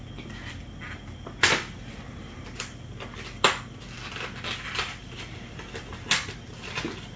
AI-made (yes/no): no